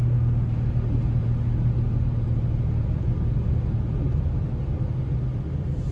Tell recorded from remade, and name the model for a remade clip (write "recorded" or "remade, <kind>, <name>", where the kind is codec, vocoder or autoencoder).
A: recorded